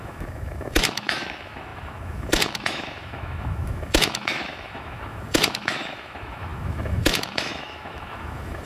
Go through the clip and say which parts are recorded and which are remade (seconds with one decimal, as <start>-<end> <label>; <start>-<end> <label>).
0.0-8.7 remade